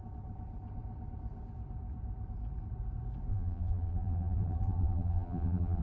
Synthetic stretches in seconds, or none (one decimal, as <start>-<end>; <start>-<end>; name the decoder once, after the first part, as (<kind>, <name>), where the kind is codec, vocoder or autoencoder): 3.3-5.8 (vocoder, BigVGAN v2)

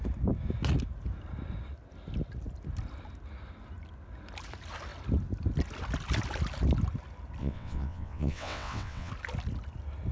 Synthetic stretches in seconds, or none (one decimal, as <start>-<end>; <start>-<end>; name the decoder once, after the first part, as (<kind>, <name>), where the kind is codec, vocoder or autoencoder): 7.4-9.1 (vocoder, WaveNeXt)